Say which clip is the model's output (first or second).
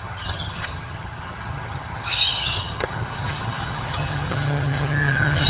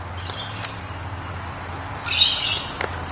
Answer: first